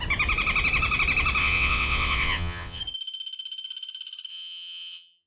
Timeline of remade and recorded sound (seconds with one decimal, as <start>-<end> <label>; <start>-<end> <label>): 0.0-1.4 recorded; 1.4-2.8 remade; 2.8-4.3 recorded; 4.3-5.3 remade